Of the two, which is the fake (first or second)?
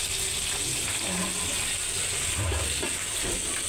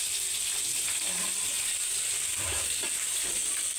second